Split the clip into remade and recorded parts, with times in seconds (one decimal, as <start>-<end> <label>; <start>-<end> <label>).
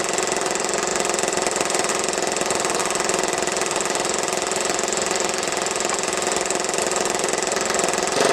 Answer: 0.0-0.9 recorded; 0.9-1.9 remade; 1.9-8.3 recorded